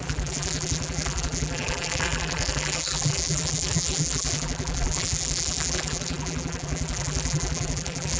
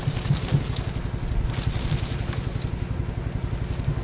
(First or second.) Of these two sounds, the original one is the second